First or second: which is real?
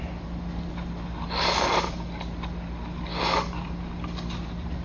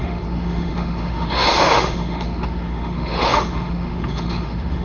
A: first